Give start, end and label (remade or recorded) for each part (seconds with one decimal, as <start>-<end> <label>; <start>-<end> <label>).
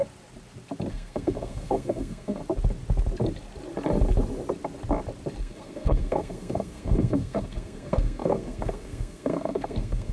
0.0-0.9 recorded; 0.9-2.4 remade; 2.4-5.4 recorded; 5.4-10.1 remade